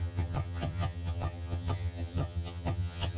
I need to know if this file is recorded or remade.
remade